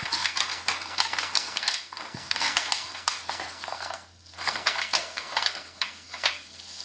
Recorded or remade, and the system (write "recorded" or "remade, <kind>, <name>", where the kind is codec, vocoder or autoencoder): remade, codec, SNAC